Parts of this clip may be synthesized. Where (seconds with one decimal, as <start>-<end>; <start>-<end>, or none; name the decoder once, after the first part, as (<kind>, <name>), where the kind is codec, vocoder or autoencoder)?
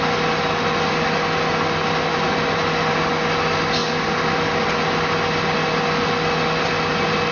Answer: none